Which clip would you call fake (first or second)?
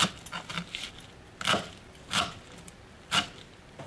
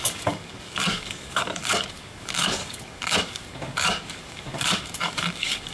second